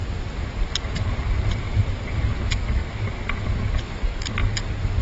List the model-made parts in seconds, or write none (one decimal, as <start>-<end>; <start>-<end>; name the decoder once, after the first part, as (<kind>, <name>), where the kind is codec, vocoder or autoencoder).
1.6-2.8 (vocoder, BigVGAN v2); 3.8-4.4

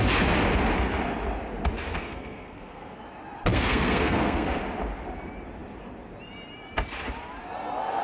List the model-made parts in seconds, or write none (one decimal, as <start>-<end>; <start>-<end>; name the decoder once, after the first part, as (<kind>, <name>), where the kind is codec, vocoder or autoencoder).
1.9-3.0 (codec, SNAC); 3.5-4.6

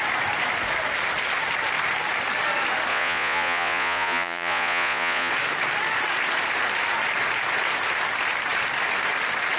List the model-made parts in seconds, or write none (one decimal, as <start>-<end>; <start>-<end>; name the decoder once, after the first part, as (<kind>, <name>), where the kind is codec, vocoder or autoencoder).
2.9-5.3 (vocoder, Vocos)